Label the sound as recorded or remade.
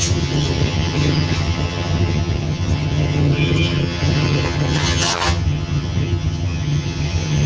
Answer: remade